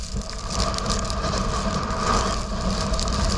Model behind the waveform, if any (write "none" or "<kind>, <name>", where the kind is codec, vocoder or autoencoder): none